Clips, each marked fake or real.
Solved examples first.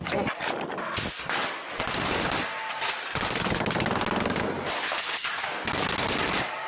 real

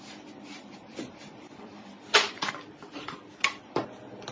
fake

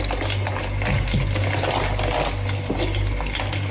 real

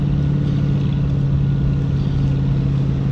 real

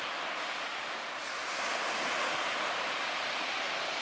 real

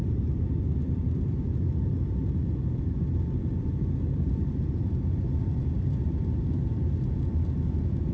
fake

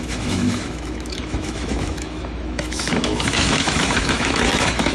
fake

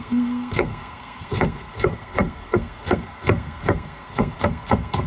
fake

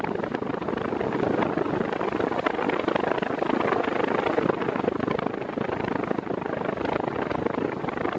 real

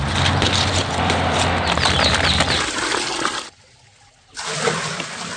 real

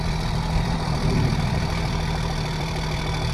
fake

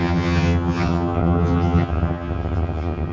fake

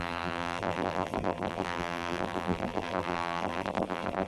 fake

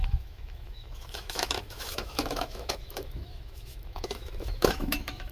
fake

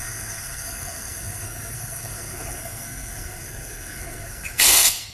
fake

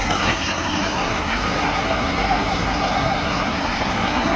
fake